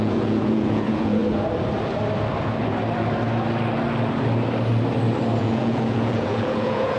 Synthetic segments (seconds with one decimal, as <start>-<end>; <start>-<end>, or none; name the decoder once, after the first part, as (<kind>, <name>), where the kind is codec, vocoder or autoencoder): 0.0-1.2 (vocoder, Vocos); 5.4-7.0

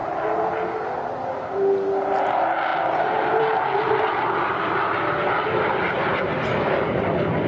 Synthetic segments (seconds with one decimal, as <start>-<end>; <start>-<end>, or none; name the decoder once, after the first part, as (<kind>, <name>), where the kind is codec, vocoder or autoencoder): none

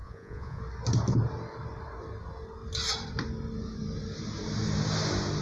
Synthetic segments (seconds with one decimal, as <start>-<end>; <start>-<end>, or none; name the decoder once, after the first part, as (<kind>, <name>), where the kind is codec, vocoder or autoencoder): 0.0-0.6 (vocoder, Vocos)

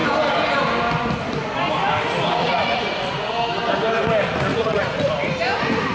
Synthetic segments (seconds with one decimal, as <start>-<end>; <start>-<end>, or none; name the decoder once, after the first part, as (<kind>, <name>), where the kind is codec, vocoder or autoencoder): 2.4-3.3 (vocoder, Vocos); 4.5-5.1

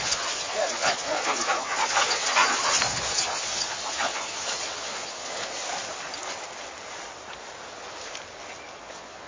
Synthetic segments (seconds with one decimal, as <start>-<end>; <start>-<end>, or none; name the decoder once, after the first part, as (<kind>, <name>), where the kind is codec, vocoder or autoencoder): 0.0-5.6 (vocoder, Vocos); 8.8-9.3

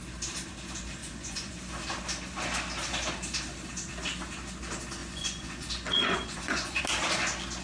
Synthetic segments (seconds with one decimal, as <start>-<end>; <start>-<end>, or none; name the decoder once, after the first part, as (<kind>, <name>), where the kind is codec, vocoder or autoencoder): 1.0-1.6 (vocoder, Vocos); 5.0-6.8

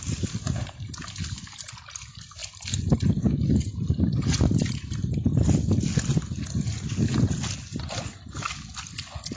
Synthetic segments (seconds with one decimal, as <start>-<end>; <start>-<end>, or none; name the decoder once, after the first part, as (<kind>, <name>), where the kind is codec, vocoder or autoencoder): none